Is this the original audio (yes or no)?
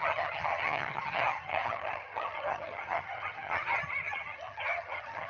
no